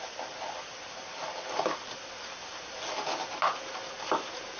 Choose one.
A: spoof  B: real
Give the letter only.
B